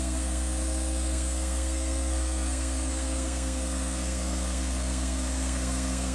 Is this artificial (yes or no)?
yes